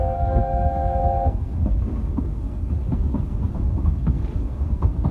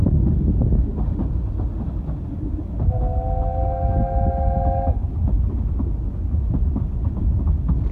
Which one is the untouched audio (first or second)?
second